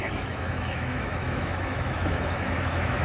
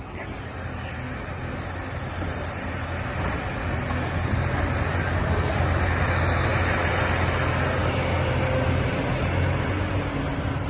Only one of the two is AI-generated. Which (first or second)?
first